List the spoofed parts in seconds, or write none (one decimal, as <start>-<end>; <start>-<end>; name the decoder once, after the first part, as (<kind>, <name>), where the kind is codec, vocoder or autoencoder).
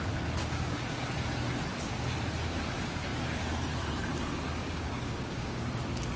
0.4-1.0 (codec, DAC); 4.6-5.7